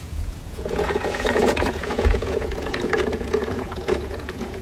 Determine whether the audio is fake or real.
fake